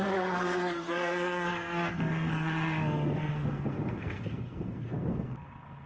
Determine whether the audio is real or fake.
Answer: fake